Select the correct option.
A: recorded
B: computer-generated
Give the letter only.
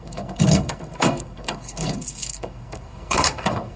B